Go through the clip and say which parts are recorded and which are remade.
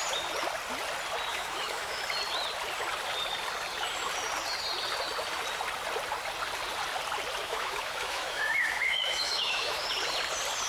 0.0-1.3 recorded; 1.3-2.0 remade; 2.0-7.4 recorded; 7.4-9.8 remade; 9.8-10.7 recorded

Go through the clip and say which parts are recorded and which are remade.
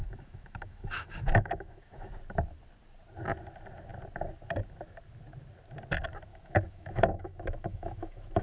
0.0-2.1 remade; 2.1-6.3 recorded; 6.3-8.4 remade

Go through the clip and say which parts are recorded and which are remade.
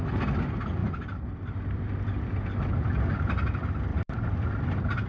0.0-0.8 recorded; 0.8-2.3 remade; 2.3-3.9 recorded; 3.9-4.5 remade; 4.5-5.1 recorded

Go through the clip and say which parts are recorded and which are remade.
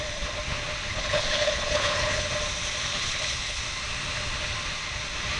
0.0-0.9 recorded; 0.9-2.3 remade; 2.3-2.9 recorded; 2.9-3.6 remade; 3.6-5.4 recorded